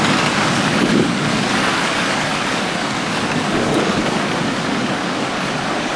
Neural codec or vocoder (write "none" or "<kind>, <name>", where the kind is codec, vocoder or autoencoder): codec, DAC